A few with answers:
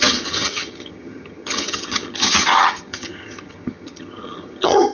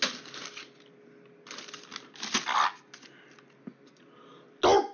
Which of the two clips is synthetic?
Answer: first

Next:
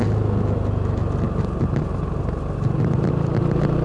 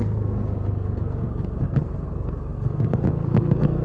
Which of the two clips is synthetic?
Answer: second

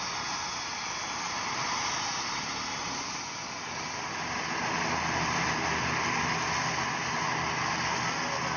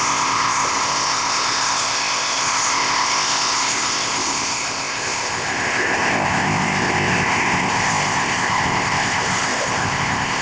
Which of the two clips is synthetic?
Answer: second